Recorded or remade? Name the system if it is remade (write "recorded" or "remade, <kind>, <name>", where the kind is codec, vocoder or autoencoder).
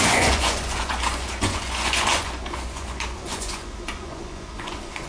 remade, vocoder, Vocos